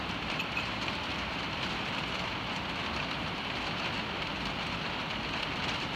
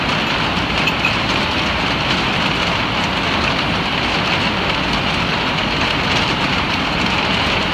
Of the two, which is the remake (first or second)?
first